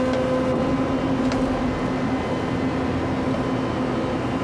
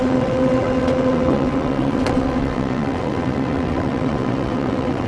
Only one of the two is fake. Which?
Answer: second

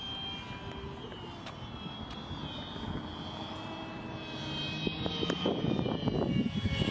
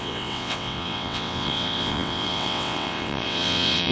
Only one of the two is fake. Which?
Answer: second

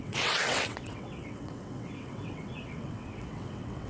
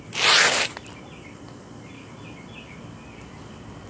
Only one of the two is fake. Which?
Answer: first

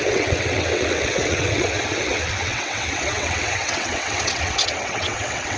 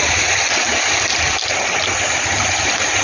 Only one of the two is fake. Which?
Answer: first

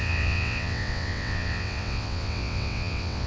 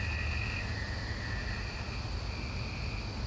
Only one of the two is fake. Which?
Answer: first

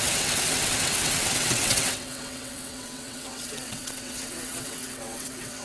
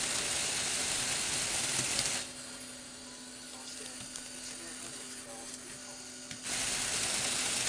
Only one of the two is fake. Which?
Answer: first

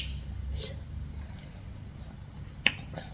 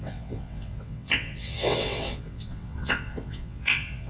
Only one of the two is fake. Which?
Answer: second